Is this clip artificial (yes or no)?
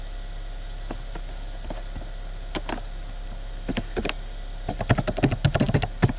no